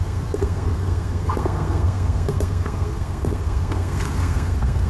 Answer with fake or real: fake